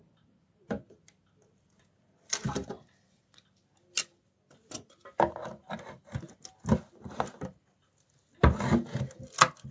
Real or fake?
real